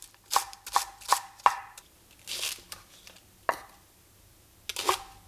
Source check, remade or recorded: recorded